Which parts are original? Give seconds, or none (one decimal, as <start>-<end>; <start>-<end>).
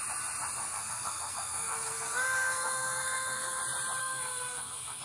0.0-0.6; 3.6-4.0